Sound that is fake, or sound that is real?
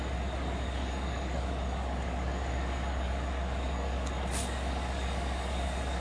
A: fake